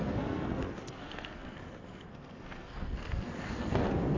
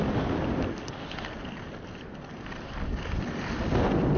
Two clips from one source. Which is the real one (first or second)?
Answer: second